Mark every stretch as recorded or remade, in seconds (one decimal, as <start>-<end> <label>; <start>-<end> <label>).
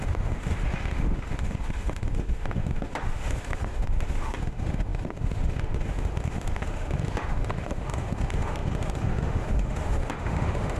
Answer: 0.0-10.8 remade